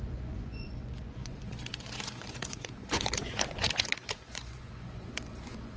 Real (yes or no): no